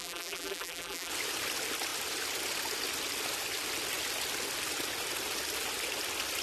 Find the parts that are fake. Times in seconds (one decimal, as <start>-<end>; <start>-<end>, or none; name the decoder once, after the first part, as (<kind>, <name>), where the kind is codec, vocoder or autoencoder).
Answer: 0.0-1.1 (vocoder, BigVGAN v2)